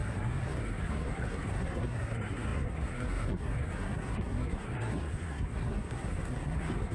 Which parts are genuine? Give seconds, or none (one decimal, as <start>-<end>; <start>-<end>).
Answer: none